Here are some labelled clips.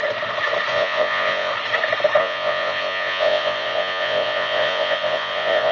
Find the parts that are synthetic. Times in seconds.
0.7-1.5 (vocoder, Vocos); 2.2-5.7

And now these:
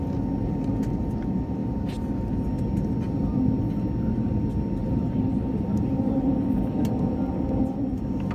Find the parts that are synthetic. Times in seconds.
4.8-6.3 (vocoder, BigVGAN v2)

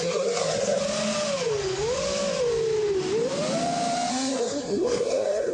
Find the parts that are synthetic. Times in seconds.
0.0-0.8 (codec, SNAC); 4.1-5.5

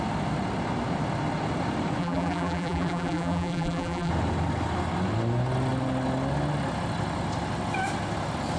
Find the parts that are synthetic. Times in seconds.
2.0-4.1 (vocoder, BigVGAN v2)

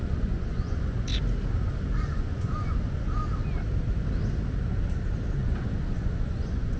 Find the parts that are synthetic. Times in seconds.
0.0-1.1 (vocoder, Vocos); 1.9-3.2; 5.3-6.8

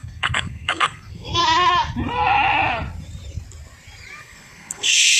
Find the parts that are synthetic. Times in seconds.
0.0-1.4 (codec, SNAC); 4.2-5.2

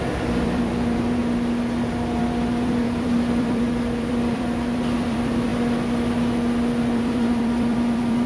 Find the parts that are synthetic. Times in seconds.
0.0-1.2 (vocoder, BigVGAN v2); 2.2-5.5; 6.8-8.3